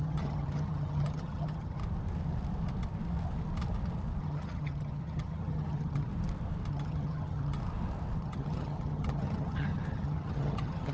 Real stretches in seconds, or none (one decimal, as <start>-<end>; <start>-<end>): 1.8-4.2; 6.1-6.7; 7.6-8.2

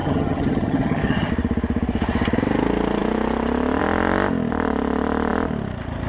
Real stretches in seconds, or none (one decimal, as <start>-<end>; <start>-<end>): 1.3-6.1

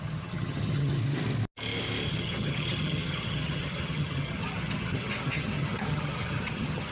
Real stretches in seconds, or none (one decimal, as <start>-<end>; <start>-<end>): 1.0-2.1

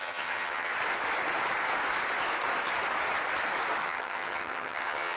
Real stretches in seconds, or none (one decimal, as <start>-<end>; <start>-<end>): 0.7-3.8

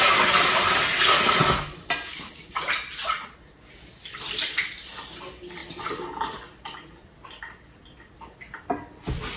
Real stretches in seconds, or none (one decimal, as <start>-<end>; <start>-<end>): 0.0-9.4

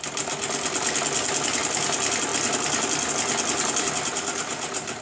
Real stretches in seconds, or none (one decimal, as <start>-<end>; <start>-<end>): 0.0-5.0